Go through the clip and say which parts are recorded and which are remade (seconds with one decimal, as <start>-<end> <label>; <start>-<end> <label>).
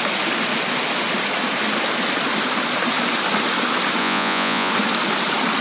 0.0-4.0 recorded; 4.0-4.7 remade; 4.7-5.6 recorded